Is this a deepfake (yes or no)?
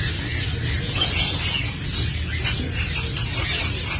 no